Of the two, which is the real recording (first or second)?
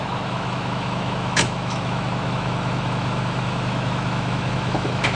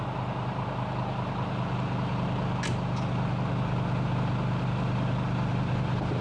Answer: second